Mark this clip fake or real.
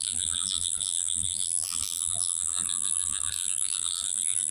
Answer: fake